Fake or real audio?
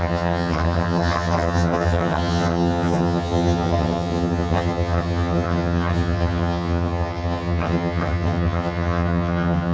fake